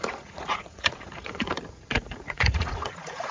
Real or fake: fake